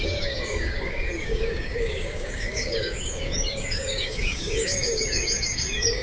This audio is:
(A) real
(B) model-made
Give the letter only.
B